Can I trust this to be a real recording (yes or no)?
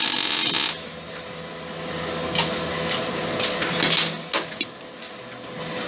yes